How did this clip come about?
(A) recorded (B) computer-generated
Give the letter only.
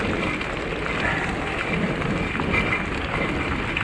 A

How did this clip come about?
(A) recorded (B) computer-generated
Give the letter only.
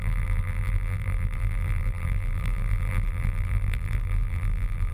B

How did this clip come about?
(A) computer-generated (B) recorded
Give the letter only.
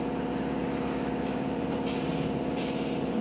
A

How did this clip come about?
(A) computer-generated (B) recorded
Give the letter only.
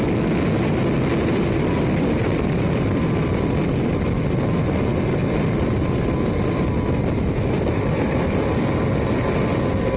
B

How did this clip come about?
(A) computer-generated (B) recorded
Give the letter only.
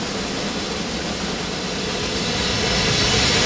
B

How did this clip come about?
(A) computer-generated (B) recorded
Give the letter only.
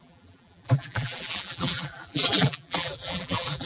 A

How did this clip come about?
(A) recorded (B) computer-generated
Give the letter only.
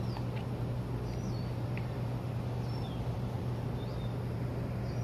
B